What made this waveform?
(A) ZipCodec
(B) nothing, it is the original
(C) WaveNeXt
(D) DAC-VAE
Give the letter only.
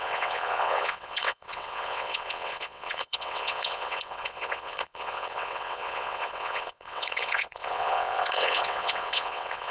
C